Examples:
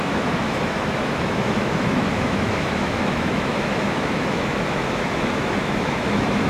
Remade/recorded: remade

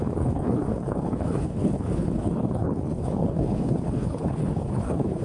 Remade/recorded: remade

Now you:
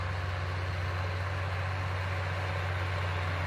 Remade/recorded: recorded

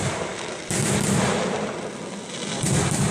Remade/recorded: recorded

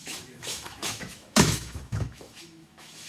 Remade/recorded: remade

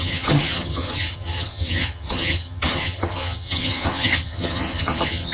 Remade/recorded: remade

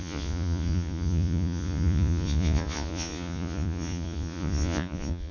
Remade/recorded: remade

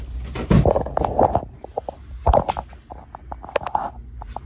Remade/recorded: recorded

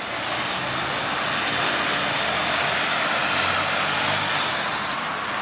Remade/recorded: recorded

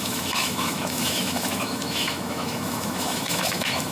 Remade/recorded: remade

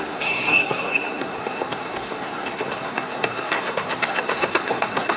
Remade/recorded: remade